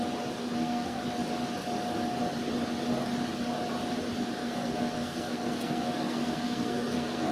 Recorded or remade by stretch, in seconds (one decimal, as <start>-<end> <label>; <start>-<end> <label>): 0.0-0.4 recorded; 0.4-1.0 remade; 1.0-4.4 recorded; 4.4-7.3 remade